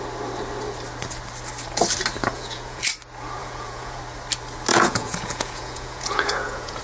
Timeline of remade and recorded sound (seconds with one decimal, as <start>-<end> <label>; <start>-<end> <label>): 0.0-2.3 recorded; 2.3-2.8 remade; 2.8-3.4 recorded; 3.4-4.0 remade; 4.0-4.7 recorded; 4.7-6.8 remade